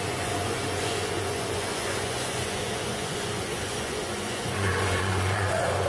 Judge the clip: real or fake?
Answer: fake